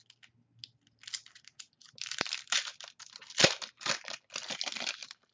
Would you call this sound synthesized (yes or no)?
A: no